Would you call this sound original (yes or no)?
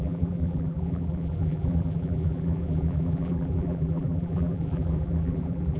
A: no